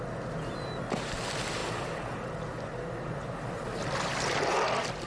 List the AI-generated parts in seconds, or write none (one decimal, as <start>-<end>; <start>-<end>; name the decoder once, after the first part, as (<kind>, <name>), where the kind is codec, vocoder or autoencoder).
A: none